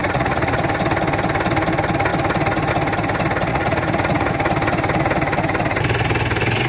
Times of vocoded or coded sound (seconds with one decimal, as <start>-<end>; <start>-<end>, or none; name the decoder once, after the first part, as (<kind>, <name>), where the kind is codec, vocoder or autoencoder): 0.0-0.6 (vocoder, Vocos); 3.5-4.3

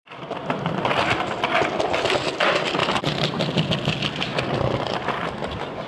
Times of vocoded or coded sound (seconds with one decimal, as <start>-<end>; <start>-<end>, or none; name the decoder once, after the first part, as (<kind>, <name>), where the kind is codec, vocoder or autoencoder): 0.4-0.9 (vocoder, BigVGAN v2); 2.8-3.6

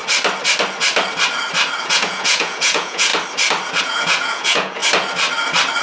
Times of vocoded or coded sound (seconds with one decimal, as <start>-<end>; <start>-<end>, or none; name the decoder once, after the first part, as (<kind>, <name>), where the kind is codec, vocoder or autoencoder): 1.8-3.1 (vocoder, Vocos); 3.8-4.8